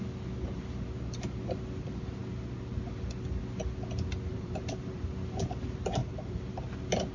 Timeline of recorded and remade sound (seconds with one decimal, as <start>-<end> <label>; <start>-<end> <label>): 0.0-4.3 recorded; 4.3-5.4 remade; 5.4-6.0 recorded; 6.0-6.6 remade; 6.6-7.1 recorded